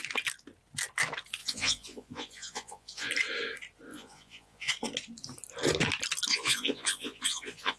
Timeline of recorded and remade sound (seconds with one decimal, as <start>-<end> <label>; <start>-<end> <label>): 0.0-1.4 recorded; 1.4-3.1 remade; 3.1-3.9 recorded; 3.9-4.7 remade; 4.7-6.3 recorded; 6.3-7.8 remade